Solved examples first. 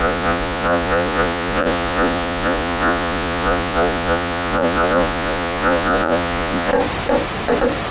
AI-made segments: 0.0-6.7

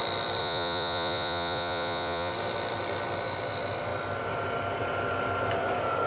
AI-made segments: 0.4-2.3

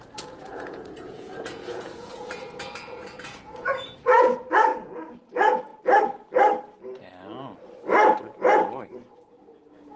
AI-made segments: 0.0-5.7; 9.1-10.0

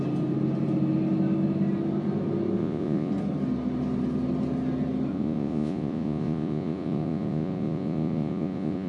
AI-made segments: 2.6-3.1; 5.1-8.9

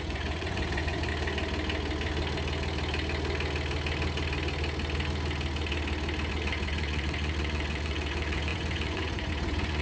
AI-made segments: 0.0-1.1; 6.3-9.8